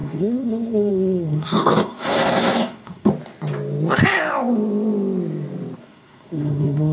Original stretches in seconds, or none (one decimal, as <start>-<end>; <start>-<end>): 3.1-5.8